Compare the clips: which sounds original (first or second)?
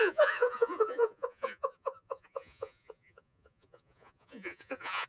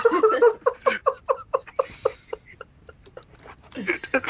second